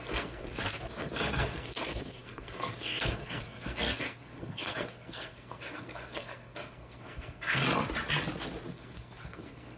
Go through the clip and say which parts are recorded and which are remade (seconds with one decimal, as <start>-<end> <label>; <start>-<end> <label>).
0.0-7.6 remade; 7.6-8.7 recorded; 8.7-9.8 remade